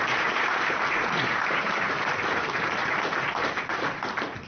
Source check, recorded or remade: remade